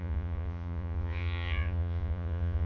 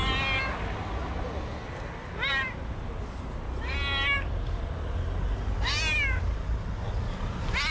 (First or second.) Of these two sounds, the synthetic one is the first